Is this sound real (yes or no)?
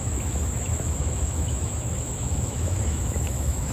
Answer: no